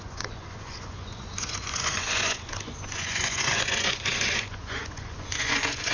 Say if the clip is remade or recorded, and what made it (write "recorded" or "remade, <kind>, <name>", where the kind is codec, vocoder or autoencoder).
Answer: remade, vocoder, Vocos